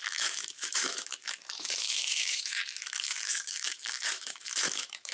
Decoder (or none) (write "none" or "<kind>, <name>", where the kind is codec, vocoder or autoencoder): autoencoder, DAC-VAE